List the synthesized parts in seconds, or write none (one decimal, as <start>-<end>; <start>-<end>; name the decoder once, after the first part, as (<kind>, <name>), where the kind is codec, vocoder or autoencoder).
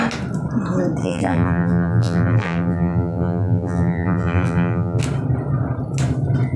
1.0-5.0 (vocoder, BigVGAN v2)